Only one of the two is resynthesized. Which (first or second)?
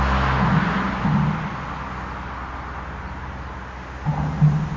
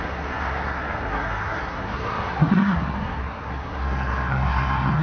second